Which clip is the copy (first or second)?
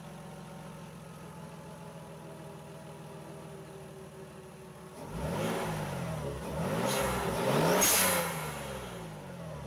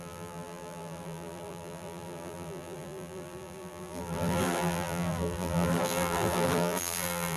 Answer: second